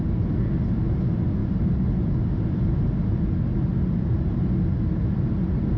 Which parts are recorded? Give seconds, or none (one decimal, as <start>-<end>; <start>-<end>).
0.0-5.8